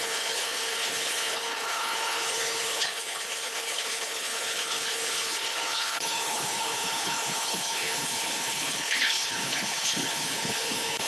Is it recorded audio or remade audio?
remade